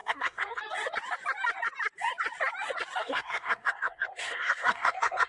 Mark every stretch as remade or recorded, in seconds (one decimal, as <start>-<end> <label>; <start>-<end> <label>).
0.0-0.6 remade; 0.6-3.0 recorded; 3.0-5.3 remade